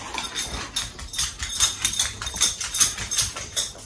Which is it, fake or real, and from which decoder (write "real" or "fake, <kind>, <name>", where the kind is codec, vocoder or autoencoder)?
real